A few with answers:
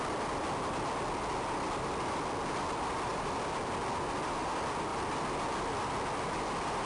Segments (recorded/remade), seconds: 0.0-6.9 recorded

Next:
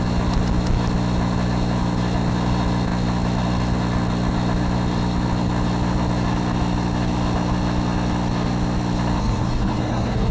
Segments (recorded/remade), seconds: 0.0-9.2 recorded; 9.2-10.3 remade

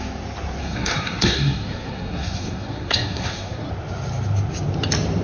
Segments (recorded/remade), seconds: 0.0-0.6 recorded; 0.6-3.7 remade; 3.7-5.2 recorded

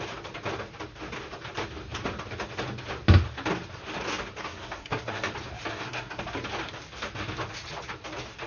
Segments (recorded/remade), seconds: 0.0-4.4 recorded; 4.4-5.3 remade; 5.3-5.7 recorded; 5.7-6.2 remade; 6.2-8.5 recorded